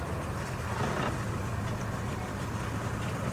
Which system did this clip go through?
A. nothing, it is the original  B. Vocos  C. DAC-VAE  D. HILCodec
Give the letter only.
A